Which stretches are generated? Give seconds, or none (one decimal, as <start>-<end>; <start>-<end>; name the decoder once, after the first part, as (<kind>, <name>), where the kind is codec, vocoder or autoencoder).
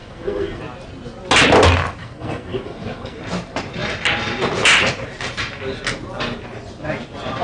0.0-0.6 (codec, SNAC); 2.0-3.2